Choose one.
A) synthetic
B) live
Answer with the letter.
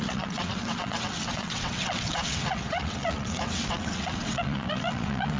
A